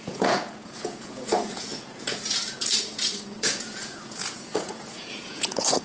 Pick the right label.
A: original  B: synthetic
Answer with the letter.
B